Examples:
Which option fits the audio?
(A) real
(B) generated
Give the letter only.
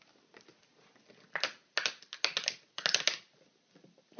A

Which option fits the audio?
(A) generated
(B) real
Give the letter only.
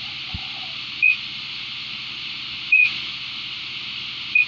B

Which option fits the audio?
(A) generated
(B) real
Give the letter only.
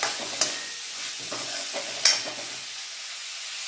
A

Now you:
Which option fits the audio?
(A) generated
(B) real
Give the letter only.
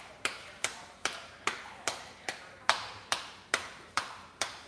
A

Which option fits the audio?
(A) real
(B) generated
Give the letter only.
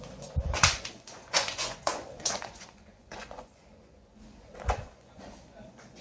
B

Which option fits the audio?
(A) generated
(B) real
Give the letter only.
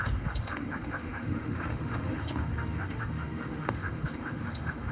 A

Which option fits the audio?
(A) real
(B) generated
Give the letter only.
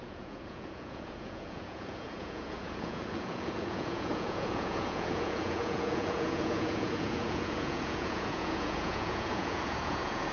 B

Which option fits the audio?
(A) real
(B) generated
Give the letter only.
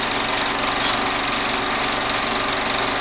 A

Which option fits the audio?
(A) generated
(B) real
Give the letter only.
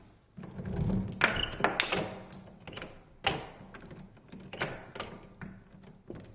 B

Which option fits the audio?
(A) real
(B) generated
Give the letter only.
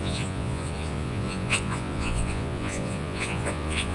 B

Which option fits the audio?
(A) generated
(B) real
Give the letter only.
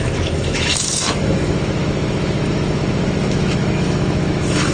A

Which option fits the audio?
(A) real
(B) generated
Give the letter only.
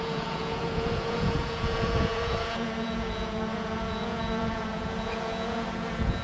B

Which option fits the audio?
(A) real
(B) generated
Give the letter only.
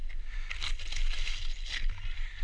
A